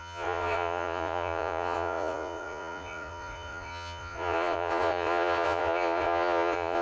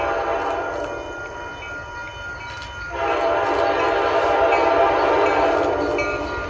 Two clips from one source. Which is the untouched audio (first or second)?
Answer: second